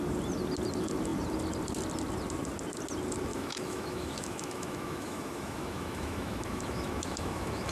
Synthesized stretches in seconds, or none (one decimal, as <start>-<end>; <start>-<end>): 3.3-7.7